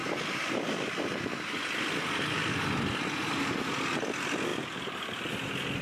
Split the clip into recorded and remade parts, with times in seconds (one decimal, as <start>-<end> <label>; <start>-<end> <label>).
0.0-5.8 recorded